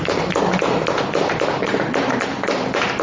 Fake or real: real